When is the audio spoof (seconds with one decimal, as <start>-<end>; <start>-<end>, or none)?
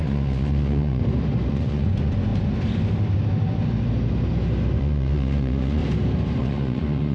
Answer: 0.0-1.0; 1.5-2.3; 4.8-5.8; 6.4-7.1